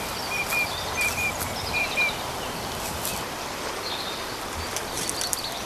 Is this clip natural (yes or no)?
yes